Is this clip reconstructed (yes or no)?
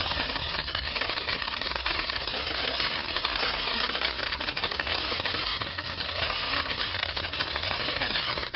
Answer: yes